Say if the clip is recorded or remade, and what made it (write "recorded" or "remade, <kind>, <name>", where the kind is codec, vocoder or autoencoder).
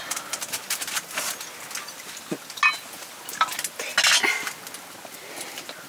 recorded